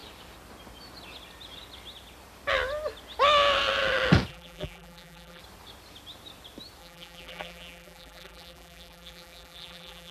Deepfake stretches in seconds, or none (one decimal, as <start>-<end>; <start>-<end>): 4.3-5.4; 6.8-10.1